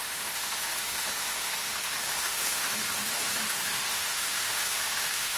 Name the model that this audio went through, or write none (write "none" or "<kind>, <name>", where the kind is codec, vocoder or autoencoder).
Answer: autoencoder, DAC-VAE